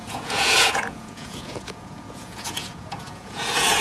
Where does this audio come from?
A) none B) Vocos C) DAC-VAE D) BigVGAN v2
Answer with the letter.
B